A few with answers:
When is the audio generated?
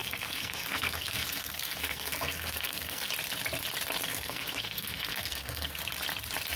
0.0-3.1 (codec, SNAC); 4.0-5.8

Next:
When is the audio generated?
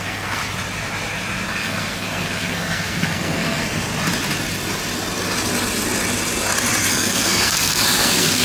0.0-0.4 (codec, SNAC); 1.5-3.9; 6.9-8.4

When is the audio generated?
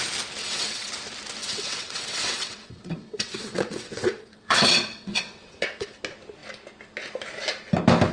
0.4-0.9 (vocoder, WaveNeXt); 1.4-6.0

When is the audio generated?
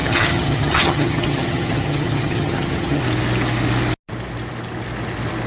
0.0-3.0 (vocoder, HiFi-GAN)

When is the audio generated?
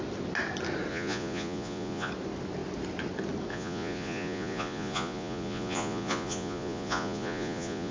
0.9-2.1 (vocoder, Vocos); 3.5-7.9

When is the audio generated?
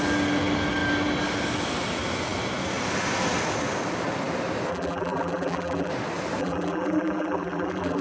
4.7-5.9 (vocoder, BigVGAN v2); 6.4-8.0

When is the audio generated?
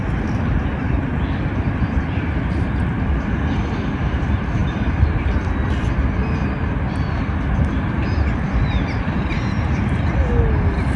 none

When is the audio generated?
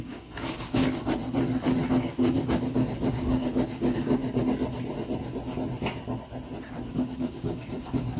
0.0-0.8 (codec, DAC); 1.9-4.2; 6.9-8.2